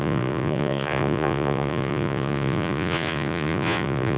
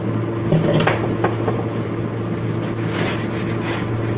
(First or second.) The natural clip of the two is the second